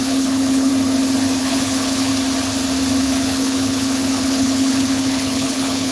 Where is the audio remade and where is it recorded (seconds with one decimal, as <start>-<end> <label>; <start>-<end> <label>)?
0.0-0.7 remade; 0.7-1.4 recorded; 1.4-2.1 remade; 2.1-3.0 recorded; 3.0-5.9 remade